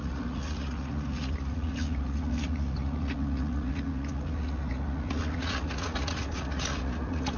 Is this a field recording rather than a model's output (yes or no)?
no